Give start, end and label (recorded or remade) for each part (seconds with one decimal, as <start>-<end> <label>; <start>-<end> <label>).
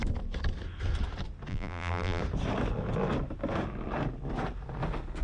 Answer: 0.0-1.5 recorded; 1.5-2.2 remade; 2.2-5.2 recorded